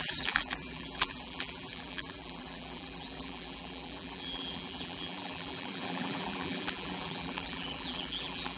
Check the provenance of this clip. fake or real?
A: fake